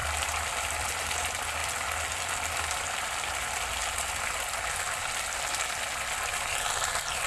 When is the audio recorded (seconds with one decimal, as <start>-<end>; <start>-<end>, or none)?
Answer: 1.0-1.6; 5.8-7.3